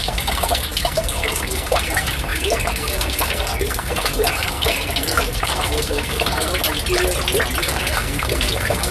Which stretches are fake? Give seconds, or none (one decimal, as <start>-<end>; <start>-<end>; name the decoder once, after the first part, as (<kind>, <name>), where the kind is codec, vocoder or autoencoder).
0.0-6.5 (codec, SNAC); 7.6-8.9